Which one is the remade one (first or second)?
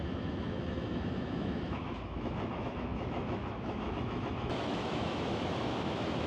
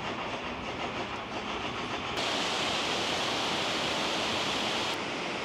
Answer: first